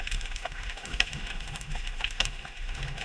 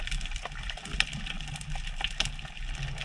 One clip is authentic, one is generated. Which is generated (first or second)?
first